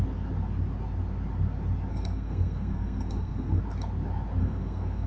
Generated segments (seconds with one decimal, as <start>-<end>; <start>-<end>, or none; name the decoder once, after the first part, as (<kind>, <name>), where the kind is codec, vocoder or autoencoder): 1.9-3.6 (codec, SNAC); 4.4-5.1